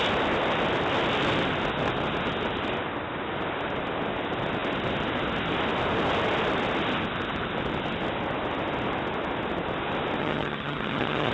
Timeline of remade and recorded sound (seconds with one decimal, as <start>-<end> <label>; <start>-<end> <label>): 0.0-10.2 recorded; 10.2-11.3 remade